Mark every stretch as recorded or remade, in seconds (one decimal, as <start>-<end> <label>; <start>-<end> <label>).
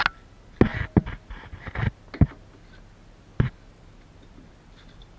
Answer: 0.0-5.2 recorded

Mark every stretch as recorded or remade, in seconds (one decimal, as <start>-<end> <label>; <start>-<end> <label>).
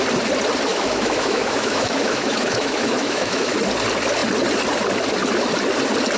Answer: 0.0-0.7 recorded; 0.7-3.6 remade; 3.6-6.2 recorded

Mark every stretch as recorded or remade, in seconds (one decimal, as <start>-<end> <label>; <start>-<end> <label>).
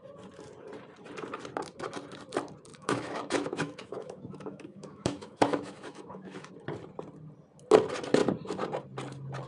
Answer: 0.0-2.7 recorded; 2.7-6.5 remade; 6.5-9.5 recorded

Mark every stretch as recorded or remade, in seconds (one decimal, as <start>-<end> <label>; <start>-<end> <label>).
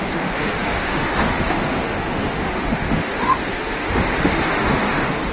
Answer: 0.0-5.3 remade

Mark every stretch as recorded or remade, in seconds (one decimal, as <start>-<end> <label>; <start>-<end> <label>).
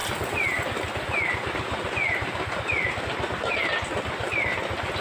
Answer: 0.0-5.0 recorded